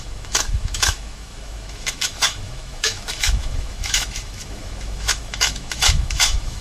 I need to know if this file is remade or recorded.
remade